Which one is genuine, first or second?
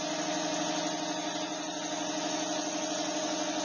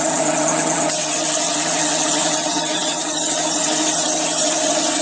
first